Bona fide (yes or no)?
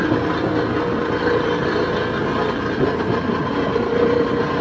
yes